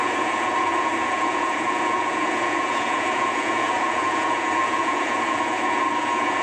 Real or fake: fake